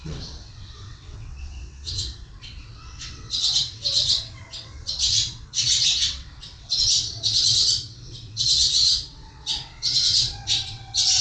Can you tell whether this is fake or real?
fake